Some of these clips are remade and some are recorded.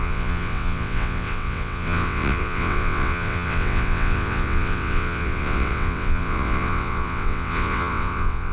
remade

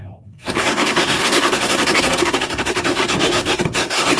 remade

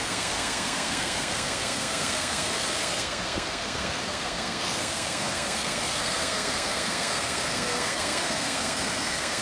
remade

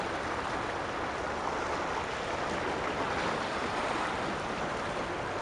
recorded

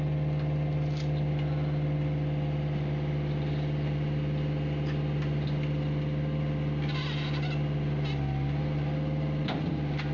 recorded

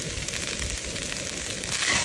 recorded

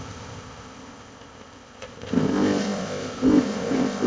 remade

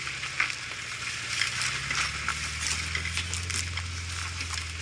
recorded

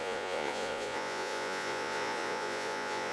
remade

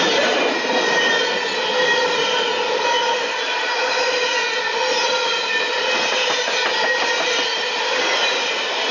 recorded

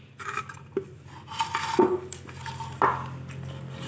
recorded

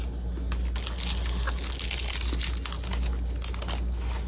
recorded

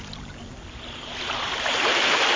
recorded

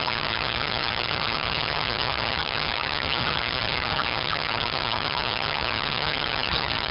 remade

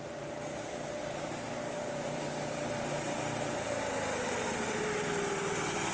recorded